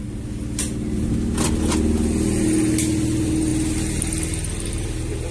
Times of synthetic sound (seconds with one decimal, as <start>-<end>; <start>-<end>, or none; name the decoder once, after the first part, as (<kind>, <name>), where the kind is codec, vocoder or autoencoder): none